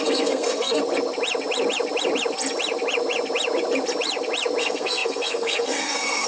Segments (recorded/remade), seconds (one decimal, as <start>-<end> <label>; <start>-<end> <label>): 0.0-0.8 remade; 0.8-4.6 recorded; 4.6-6.3 remade